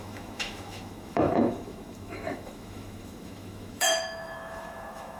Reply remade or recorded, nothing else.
remade